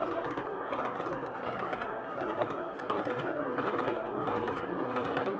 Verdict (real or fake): fake